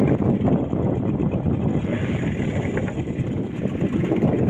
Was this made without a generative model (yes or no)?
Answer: yes